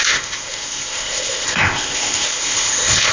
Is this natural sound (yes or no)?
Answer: no